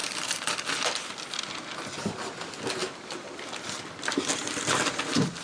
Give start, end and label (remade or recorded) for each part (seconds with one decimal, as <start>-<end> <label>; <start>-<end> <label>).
0.0-0.6 remade; 0.6-2.8 recorded; 2.8-5.0 remade; 5.0-5.4 recorded